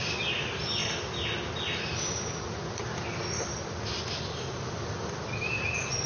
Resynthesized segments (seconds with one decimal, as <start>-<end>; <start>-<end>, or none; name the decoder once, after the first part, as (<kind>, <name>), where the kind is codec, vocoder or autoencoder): none